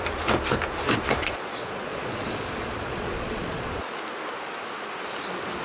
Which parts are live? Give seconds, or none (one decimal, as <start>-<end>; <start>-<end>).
0.0-1.2; 3.7-5.6